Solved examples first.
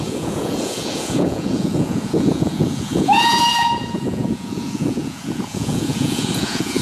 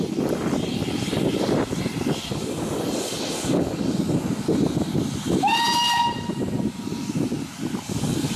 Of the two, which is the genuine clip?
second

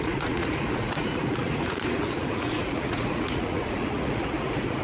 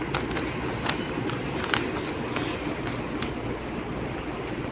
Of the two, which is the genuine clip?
second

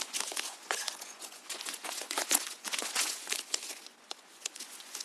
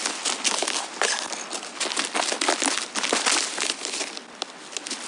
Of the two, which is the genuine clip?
second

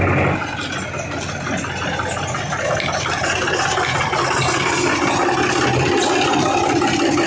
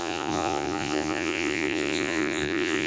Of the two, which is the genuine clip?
first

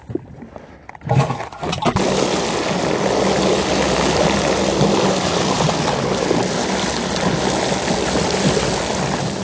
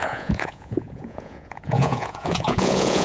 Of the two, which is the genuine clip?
first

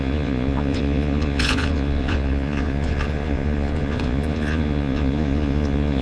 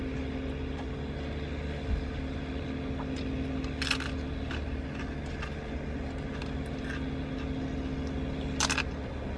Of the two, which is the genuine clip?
second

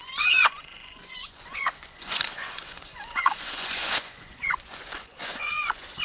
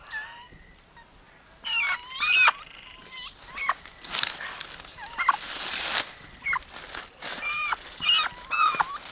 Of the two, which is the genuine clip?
second